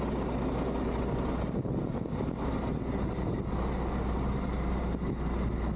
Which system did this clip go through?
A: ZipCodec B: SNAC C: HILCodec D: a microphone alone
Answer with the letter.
D